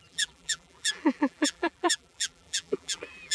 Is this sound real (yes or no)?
no